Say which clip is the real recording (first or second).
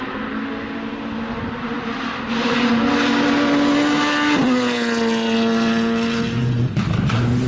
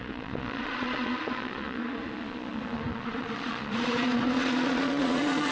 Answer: first